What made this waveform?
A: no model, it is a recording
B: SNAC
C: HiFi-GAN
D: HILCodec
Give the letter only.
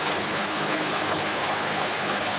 D